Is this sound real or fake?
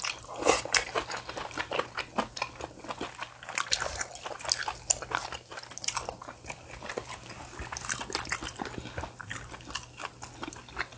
real